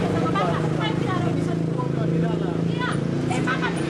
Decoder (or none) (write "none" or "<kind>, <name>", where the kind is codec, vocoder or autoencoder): none